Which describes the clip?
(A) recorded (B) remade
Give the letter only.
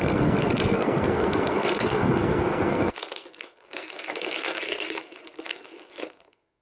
B